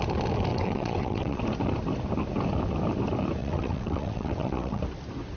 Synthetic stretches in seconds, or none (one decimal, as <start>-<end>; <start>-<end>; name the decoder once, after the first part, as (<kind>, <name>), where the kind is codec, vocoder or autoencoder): 0.5-1.4 (vocoder, WaveNeXt); 3.4-4.8